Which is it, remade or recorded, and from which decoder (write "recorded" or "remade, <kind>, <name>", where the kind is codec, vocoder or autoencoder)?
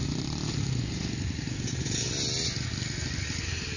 recorded